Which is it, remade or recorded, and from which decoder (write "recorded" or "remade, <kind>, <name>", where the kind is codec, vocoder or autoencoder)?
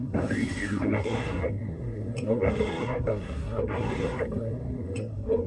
remade, codec, SNAC